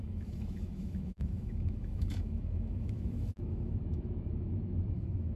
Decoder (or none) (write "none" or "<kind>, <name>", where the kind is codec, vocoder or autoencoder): autoencoder, DAC-VAE